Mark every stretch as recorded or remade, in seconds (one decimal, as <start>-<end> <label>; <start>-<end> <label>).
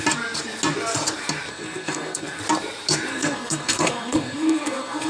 0.0-1.5 recorded; 1.5-2.4 remade; 2.4-3.1 recorded; 3.1-5.1 remade